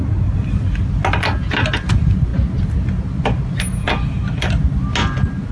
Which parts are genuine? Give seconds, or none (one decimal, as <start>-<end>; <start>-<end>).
0.0-5.5